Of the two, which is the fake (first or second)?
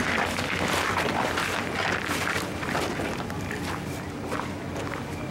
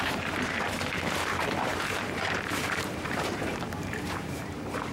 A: second